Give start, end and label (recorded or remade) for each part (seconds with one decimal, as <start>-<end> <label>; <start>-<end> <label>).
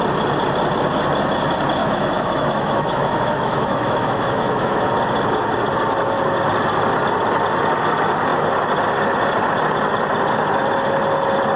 0.0-1.8 recorded; 1.8-4.8 remade; 4.8-11.6 recorded